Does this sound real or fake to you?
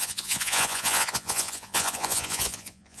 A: fake